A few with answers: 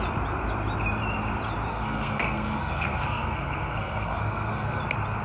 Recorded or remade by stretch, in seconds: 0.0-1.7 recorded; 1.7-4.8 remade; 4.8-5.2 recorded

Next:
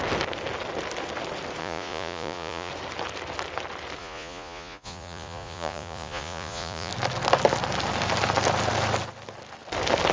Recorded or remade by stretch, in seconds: 0.0-1.6 recorded; 1.6-2.7 remade; 2.7-4.0 recorded; 4.0-6.9 remade; 6.9-10.1 recorded

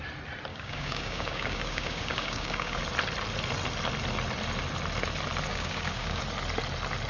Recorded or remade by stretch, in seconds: 0.0-0.5 recorded; 0.5-2.8 remade; 2.8-5.5 recorded; 5.5-6.2 remade; 6.2-7.1 recorded

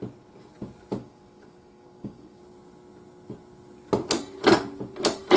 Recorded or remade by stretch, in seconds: 0.0-1.0 recorded; 1.0-2.4 remade; 2.4-5.4 recorded

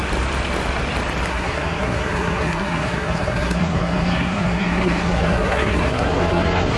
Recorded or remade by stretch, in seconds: 0.0-1.3 recorded; 1.3-6.8 remade

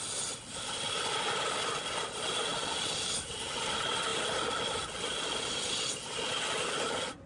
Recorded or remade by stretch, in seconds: 0.0-7.3 recorded